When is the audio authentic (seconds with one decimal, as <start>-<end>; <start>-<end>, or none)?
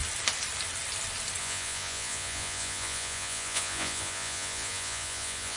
0.0-1.4